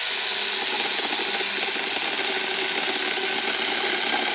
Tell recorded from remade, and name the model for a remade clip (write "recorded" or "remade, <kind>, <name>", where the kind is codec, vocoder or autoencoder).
recorded